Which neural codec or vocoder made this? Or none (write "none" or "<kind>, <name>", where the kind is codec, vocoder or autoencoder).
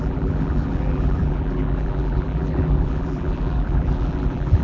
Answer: vocoder, BigVGAN v2